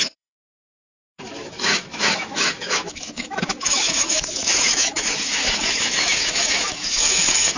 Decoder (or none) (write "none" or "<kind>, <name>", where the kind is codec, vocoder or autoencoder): autoencoder, DAC-VAE